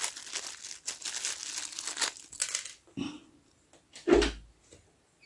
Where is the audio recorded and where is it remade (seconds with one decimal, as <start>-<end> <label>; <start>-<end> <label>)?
0.0-5.3 recorded